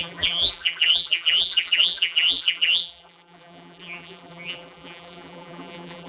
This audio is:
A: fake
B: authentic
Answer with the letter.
A